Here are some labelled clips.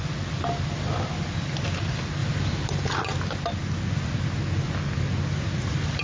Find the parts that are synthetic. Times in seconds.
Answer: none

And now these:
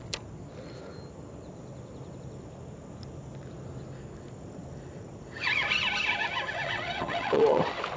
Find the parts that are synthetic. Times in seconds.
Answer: 6.5-7.6 (vocoder, WaveNeXt)

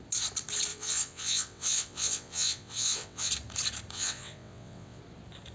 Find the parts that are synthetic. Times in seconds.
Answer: 0.7-3.3 (vocoder, WaveNeXt); 3.9-5.0

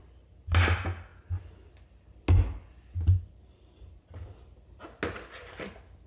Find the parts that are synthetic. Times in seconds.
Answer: none

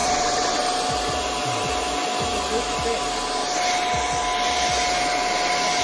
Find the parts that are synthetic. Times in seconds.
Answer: 0.0-0.6 (vocoder, WaveNeXt)

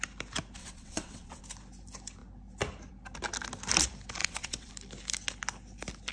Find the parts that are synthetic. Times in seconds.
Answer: 0.6-1.4 (vocoder, WaveNeXt); 4.2-4.7

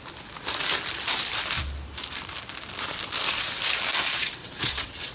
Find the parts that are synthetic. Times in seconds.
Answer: 4.4-5.1 (vocoder, WaveNeXt)

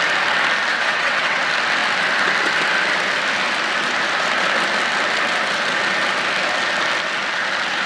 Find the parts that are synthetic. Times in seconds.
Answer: 0.7-1.4 (vocoder, WaveNeXt)